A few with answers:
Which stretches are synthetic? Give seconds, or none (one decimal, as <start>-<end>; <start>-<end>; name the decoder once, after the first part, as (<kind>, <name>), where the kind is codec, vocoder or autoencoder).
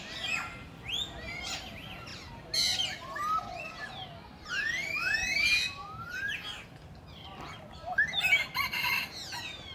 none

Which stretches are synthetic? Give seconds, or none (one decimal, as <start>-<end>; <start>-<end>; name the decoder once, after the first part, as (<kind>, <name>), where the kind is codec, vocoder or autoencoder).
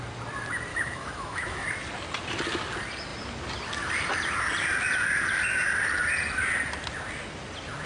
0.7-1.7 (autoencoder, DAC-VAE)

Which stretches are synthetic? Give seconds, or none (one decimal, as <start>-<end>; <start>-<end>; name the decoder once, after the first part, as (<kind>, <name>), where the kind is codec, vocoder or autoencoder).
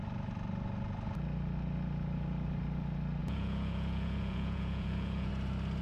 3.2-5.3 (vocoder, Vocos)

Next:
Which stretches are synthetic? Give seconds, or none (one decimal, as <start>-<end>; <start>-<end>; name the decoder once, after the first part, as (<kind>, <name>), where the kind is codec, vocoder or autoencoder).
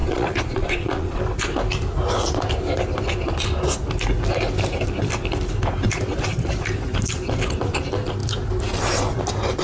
0.0-1.2 (vocoder, Vocos)